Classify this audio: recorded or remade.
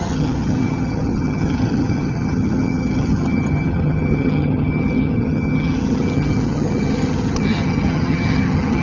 remade